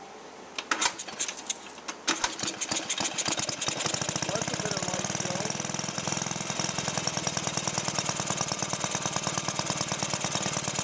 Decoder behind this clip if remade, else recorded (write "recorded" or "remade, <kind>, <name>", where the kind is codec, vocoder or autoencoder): recorded